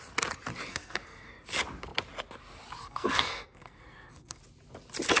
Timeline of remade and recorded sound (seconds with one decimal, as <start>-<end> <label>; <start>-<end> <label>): 0.0-0.7 recorded; 0.7-1.3 remade; 1.3-2.8 recorded; 2.8-4.4 remade; 4.4-5.2 recorded